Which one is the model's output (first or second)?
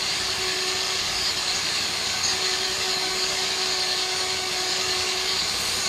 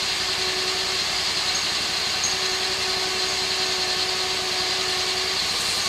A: first